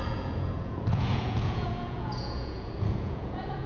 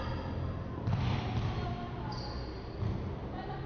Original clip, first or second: second